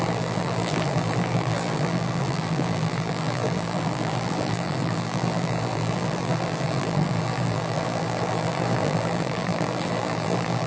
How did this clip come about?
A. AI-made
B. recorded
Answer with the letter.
A